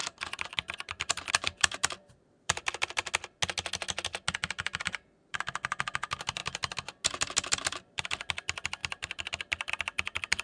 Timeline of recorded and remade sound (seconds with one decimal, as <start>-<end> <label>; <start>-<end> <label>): 0.0-3.0 remade; 3.0-4.7 recorded; 4.7-6.4 remade; 6.4-7.5 recorded; 7.5-10.4 remade